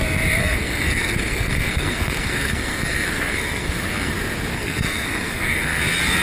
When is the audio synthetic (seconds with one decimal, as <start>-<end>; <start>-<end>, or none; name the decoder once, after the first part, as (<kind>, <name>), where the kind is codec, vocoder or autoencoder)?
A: 0.4-4.1 (codec, SNAC); 4.5-5.8